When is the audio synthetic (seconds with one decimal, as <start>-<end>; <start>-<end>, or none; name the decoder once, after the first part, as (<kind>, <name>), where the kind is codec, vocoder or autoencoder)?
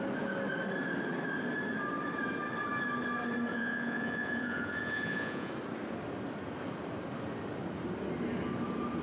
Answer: 3.5-5.5 (vocoder, Vocos)